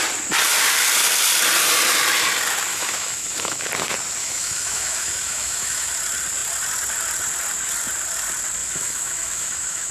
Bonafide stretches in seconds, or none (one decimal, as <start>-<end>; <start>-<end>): 0.0-2.7; 3.7-4.2; 5.9-8.6